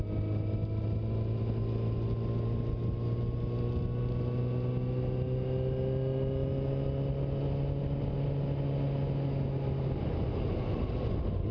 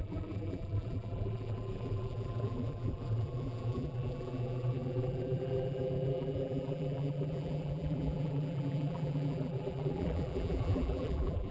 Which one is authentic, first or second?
first